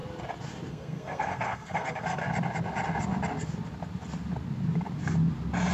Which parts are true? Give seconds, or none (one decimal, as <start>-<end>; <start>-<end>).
0.0-0.7; 2.2-5.7